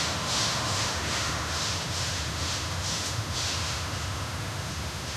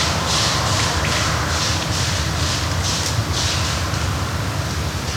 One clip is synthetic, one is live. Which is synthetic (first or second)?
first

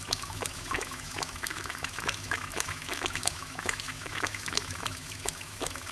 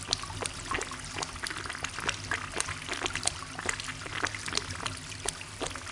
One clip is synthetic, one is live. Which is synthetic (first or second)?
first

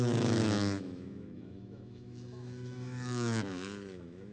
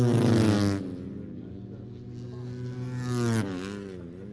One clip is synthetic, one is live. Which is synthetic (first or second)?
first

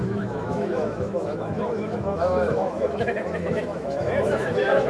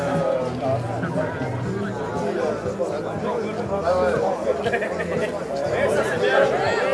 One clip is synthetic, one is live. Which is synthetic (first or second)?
first